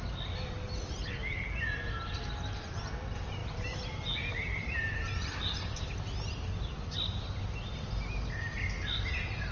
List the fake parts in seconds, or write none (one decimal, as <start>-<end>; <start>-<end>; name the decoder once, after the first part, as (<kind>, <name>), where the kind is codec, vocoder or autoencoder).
3.4-5.6 (vocoder, BigVGAN v2)